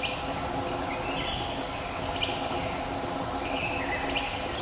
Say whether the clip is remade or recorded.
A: recorded